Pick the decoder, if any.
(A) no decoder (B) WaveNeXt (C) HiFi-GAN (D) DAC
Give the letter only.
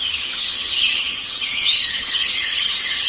C